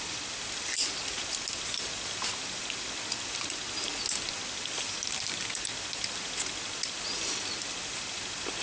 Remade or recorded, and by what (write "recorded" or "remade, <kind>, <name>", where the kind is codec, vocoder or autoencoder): recorded